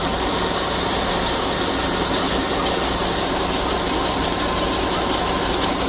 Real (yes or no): yes